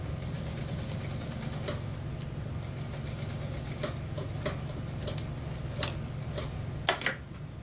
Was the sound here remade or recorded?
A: recorded